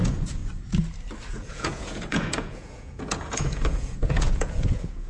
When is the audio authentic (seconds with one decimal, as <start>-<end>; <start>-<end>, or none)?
0.4-1.3